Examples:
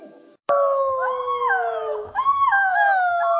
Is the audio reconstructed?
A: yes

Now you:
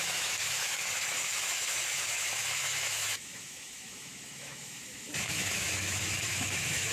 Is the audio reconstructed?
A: yes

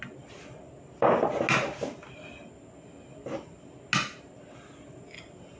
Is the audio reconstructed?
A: no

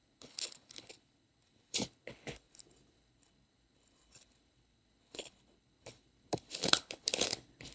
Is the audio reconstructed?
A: yes